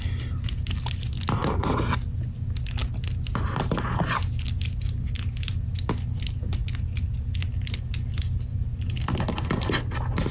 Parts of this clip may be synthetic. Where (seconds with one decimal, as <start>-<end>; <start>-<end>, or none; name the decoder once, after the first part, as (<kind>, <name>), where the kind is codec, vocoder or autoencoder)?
none